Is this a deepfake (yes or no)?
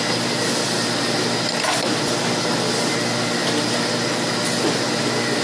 no